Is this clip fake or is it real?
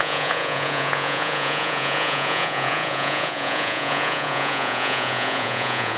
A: fake